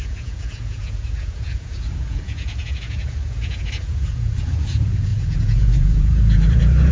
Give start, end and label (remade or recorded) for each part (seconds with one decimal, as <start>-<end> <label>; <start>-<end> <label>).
0.0-6.9 remade